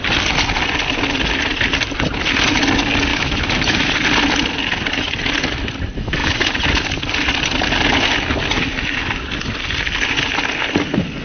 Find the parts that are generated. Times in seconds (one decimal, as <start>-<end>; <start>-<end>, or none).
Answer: 3.1-3.9